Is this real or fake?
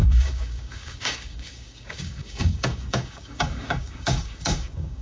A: fake